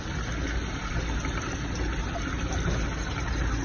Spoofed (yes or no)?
no